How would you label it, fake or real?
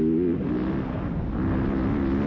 real